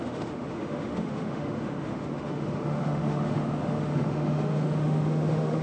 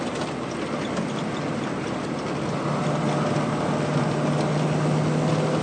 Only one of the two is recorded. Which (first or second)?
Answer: second